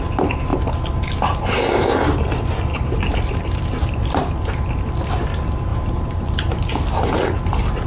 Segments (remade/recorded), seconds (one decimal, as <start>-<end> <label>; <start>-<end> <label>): 0.0-2.7 recorded; 2.7-4.3 remade; 4.3-5.7 recorded; 5.7-6.5 remade; 6.5-7.9 recorded